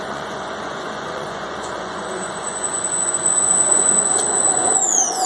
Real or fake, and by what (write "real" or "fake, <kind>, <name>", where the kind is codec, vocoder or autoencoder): fake, vocoder, Vocos